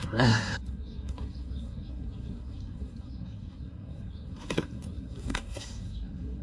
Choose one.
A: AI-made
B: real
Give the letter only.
A